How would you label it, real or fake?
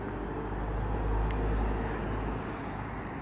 real